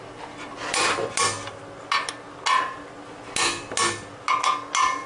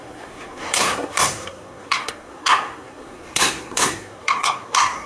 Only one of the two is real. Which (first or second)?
first